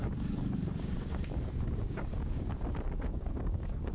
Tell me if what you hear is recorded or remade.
remade